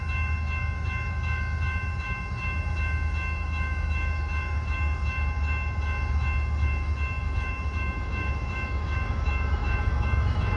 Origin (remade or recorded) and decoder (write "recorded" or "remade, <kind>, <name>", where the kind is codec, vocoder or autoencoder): remade, autoencoder, DAC-VAE